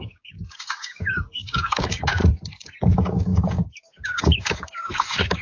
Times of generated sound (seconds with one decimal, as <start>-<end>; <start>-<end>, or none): 0.0-2.2; 2.8-5.4